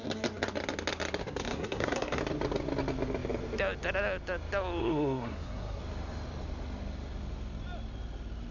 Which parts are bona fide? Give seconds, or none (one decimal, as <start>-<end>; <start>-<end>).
0.0-1.2; 2.2-4.8; 5.8-8.5